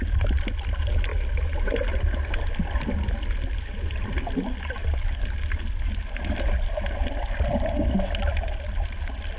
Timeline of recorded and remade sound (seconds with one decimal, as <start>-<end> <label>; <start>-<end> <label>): 0.0-9.4 recorded